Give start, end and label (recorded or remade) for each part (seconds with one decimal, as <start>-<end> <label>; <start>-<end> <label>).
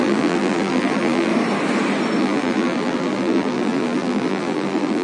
0.0-1.3 remade; 1.3-2.2 recorded; 2.2-5.0 remade